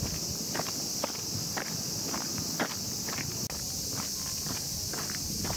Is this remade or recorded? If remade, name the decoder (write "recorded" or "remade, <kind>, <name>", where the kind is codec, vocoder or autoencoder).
recorded